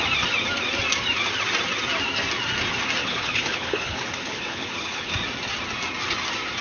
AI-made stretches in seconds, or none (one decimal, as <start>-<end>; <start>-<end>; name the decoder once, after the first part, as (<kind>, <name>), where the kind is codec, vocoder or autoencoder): 3.0-5.1 (codec, HILCodec)